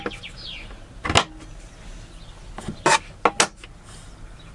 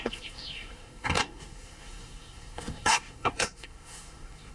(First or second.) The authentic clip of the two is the first